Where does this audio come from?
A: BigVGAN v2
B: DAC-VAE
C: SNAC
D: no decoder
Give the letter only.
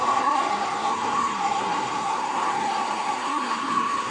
C